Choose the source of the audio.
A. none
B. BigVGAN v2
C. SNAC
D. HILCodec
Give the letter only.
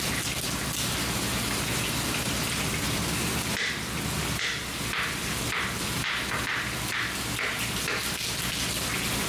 A